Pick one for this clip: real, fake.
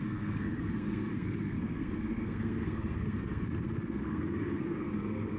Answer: fake